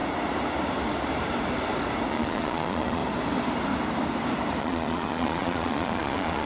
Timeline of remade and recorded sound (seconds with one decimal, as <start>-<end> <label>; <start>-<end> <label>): 0.0-2.1 recorded; 2.1-3.0 remade; 3.0-4.6 recorded; 4.6-6.5 remade